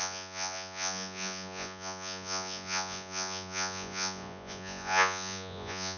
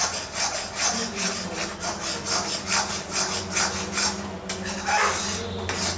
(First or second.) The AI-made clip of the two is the first